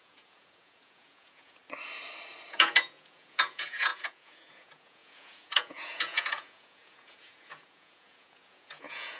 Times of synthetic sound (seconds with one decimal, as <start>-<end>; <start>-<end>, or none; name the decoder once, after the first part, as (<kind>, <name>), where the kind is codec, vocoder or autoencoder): 0.0-1.6 (vocoder, Vocos); 2.5-9.2